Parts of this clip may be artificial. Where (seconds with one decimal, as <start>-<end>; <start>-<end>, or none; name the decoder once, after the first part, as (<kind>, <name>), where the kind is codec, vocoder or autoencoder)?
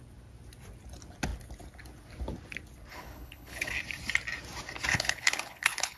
2.9-3.8 (codec, HILCodec); 4.9-6.0